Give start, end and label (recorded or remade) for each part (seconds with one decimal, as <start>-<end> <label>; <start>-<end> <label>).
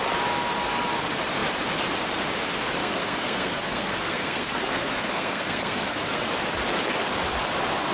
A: 0.0-2.8 recorded; 2.8-6.2 remade; 6.2-7.9 recorded